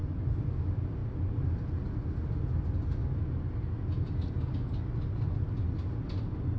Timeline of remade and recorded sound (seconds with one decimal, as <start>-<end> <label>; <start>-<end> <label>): 0.0-6.6 recorded